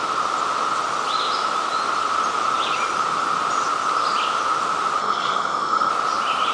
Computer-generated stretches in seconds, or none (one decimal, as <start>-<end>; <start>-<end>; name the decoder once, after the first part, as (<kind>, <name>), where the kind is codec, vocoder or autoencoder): 5.0-5.9 (codec, SNAC)